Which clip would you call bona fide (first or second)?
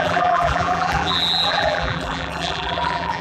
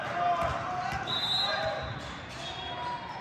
second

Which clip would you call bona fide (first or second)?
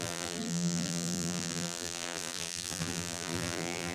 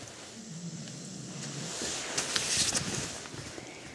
second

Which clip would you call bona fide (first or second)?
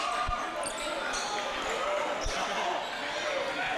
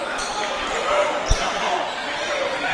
first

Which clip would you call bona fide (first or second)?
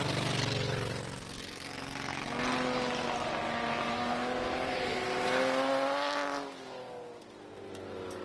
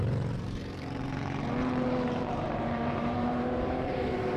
first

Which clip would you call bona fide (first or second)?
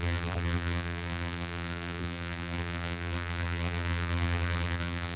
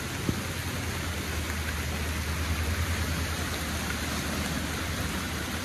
second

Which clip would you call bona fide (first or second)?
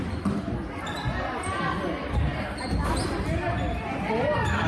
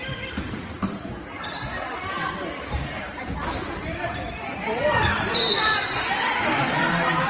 first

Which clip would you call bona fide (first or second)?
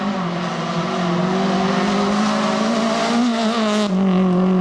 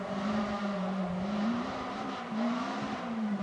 first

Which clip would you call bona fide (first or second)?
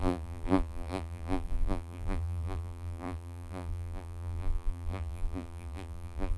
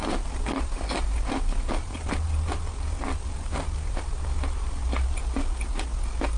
second